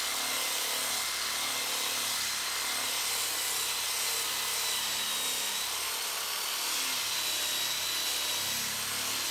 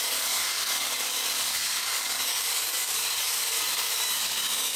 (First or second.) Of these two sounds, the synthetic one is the second